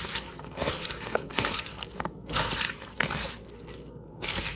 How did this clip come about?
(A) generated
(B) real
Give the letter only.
A